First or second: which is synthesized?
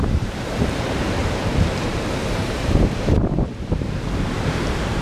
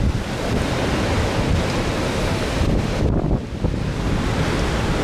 first